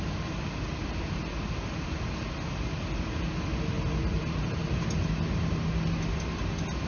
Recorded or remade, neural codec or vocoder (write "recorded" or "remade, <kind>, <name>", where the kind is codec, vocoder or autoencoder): recorded